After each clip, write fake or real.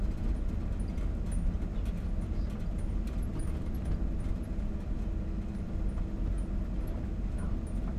real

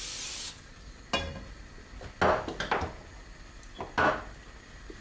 real